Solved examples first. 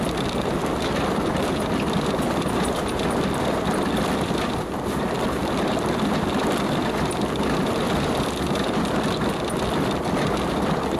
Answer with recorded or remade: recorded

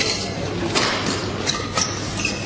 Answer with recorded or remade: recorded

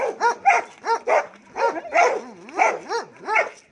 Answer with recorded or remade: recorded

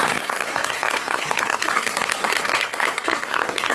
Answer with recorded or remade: remade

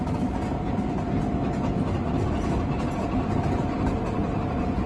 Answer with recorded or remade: recorded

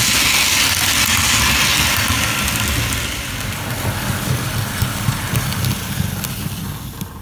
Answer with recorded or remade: recorded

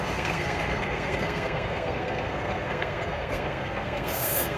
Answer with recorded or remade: remade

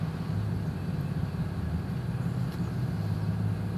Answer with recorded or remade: recorded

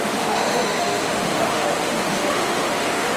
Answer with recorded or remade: remade